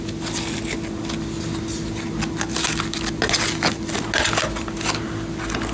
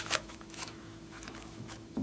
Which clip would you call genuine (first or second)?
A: first